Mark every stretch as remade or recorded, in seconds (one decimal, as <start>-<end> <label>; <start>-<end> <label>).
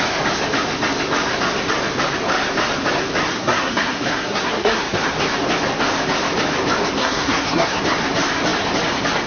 0.0-3.3 recorded; 3.3-5.0 remade; 5.0-7.0 recorded; 7.0-7.8 remade; 7.8-9.3 recorded